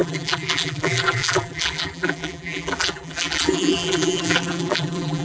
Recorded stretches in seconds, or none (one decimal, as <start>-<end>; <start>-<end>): none